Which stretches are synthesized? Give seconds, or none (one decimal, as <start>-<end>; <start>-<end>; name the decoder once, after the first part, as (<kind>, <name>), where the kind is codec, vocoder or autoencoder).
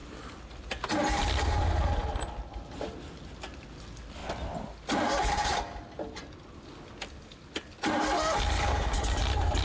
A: none